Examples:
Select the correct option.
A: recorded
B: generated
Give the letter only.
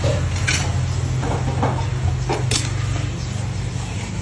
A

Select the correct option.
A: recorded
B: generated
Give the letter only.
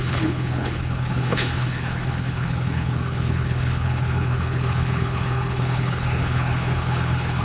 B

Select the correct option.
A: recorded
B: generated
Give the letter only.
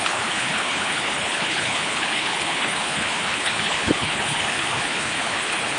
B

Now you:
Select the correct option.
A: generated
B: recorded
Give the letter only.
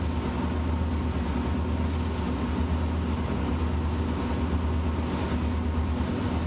B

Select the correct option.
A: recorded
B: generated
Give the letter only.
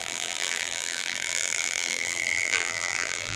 B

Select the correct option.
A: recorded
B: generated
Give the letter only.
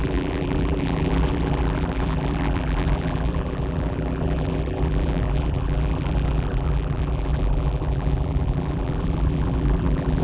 B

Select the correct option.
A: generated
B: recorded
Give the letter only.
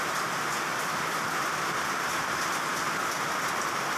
B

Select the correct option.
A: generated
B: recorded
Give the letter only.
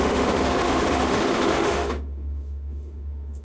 A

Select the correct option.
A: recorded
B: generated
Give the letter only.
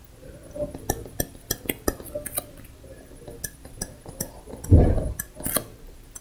A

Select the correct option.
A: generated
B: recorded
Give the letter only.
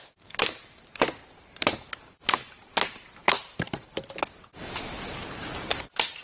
A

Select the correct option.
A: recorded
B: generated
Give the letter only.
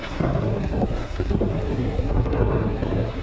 B